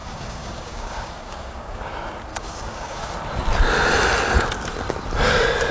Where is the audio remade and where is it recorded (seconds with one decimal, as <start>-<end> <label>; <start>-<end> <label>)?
0.0-1.9 remade; 1.9-2.3 recorded; 2.3-3.1 remade; 3.1-5.7 recorded